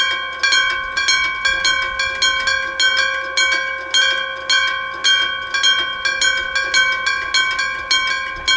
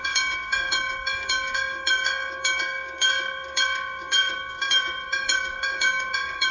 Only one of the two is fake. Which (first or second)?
second